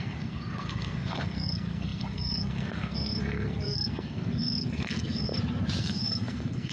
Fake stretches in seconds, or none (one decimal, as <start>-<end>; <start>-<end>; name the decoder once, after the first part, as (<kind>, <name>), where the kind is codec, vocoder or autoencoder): 0.0-5.3 (codec, SNAC); 5.8-6.7